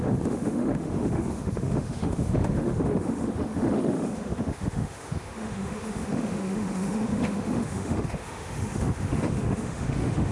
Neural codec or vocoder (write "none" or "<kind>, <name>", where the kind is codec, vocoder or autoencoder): autoencoder, DAC-VAE